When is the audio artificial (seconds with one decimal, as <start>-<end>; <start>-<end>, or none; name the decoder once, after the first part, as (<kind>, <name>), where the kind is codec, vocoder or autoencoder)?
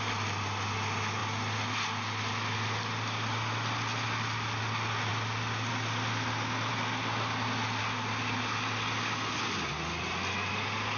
none